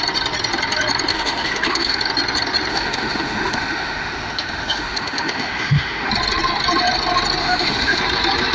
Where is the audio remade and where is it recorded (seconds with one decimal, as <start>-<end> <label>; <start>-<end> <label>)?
0.0-1.1 recorded; 1.1-2.0 remade; 2.0-2.7 recorded; 2.7-6.1 remade; 6.1-7.4 recorded; 7.4-8.0 remade; 8.0-8.5 recorded